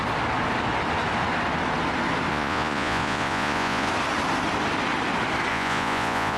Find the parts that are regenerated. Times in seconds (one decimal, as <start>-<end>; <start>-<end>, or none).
2.3-3.9; 5.5-6.4